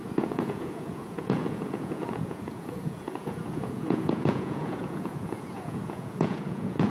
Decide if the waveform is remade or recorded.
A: remade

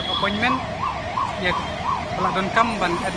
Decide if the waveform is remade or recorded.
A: recorded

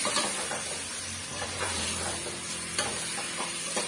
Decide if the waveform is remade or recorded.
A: remade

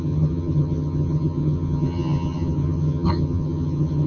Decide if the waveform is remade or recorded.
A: remade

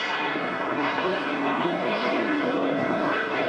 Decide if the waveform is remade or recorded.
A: remade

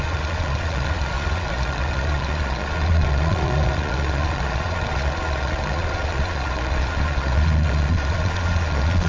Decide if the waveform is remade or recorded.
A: remade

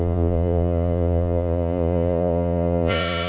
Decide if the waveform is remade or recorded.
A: remade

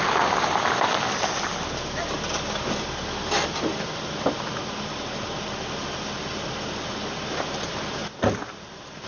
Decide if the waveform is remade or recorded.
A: recorded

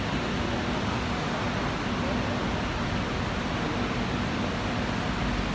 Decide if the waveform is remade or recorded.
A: recorded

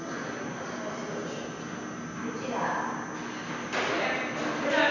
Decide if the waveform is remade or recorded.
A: recorded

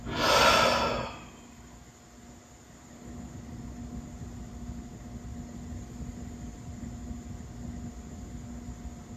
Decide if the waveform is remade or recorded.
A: recorded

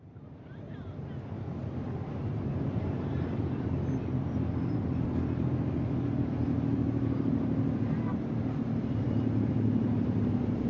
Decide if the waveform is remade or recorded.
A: recorded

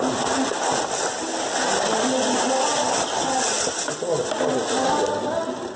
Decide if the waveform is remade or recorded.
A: recorded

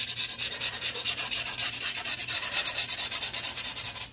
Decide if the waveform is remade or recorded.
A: recorded